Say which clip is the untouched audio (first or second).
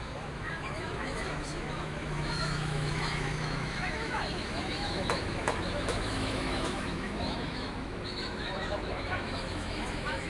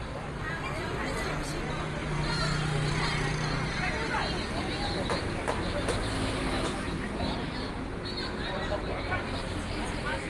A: second